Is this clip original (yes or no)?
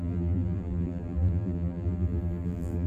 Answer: no